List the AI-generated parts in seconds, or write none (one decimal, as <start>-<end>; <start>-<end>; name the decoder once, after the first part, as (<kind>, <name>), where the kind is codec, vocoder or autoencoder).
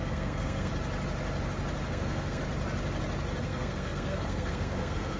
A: 0.0-0.7 (codec, SNAC); 1.9-2.4; 3.4-5.2